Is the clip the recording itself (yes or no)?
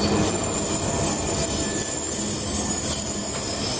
yes